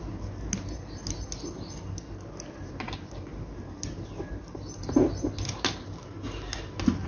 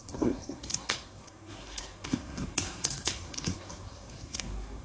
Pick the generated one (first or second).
second